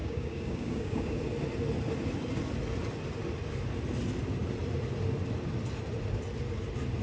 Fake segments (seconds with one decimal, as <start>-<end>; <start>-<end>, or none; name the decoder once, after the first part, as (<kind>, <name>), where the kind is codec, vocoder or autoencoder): 0.0-1.2 (codec, DAC)